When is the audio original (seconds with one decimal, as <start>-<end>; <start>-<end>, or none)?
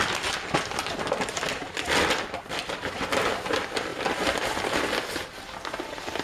0.0-6.2